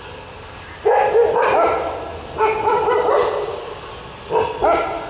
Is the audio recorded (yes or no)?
yes